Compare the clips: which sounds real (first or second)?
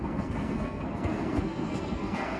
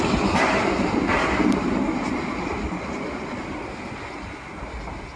second